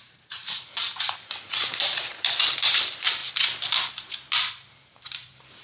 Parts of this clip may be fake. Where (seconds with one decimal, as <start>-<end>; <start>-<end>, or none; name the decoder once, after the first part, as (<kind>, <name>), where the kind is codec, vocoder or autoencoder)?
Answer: 0.0-3.2 (vocoder, BigVGAN v2); 4.7-5.6